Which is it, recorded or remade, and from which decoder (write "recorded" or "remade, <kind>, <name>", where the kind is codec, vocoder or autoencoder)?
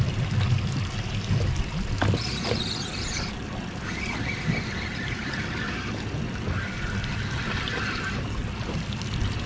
recorded